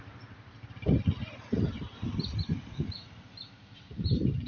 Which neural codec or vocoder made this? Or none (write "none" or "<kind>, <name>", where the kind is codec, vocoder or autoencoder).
none